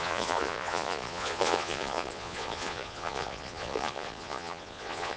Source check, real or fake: fake